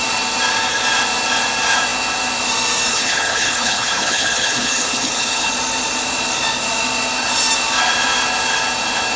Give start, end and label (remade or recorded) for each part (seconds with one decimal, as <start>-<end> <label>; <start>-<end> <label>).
0.0-2.9 recorded; 2.9-5.5 remade; 5.5-9.2 recorded